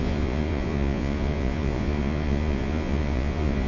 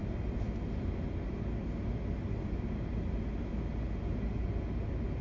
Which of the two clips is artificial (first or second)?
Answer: first